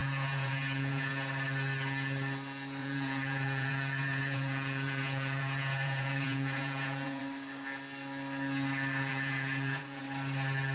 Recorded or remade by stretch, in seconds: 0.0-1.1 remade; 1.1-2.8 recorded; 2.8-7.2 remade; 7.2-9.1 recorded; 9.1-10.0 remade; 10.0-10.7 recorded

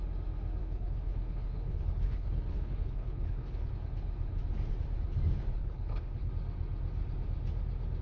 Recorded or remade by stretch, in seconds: 0.0-0.6 recorded; 0.6-3.7 remade; 3.7-5.6 recorded; 5.6-6.3 remade; 6.3-8.0 recorded

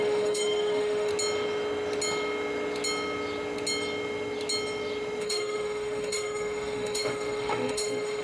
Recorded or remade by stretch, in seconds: 0.0-1.1 remade; 1.1-5.2 recorded; 5.2-8.2 remade

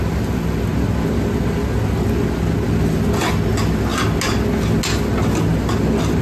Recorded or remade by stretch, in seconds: 0.0-6.2 recorded

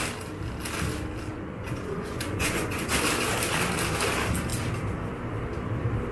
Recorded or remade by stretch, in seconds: 0.0-1.3 recorded; 1.3-2.9 remade; 2.9-6.1 recorded